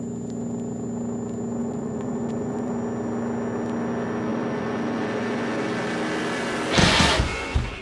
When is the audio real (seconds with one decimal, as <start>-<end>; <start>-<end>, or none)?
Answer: 0.0-1.6; 2.7-4.3; 5.7-6.8